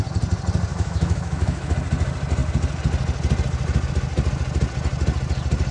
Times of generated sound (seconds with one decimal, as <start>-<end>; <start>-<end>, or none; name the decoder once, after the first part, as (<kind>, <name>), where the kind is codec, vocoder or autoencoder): 0.7-1.7 (autoencoder, DAC-VAE)